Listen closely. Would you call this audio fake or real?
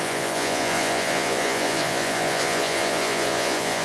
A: fake